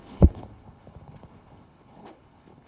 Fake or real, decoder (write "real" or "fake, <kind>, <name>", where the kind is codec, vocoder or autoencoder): fake, codec, HILCodec